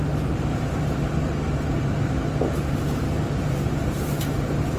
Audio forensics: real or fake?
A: fake